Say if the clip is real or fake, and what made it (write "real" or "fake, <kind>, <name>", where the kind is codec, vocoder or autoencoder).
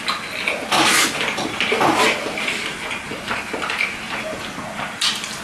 real